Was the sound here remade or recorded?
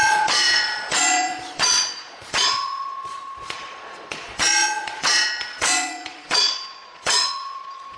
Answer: remade